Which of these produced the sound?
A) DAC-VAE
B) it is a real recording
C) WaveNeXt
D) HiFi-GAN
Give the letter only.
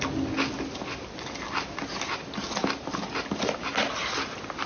B